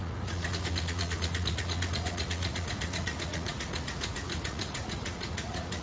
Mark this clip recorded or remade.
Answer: remade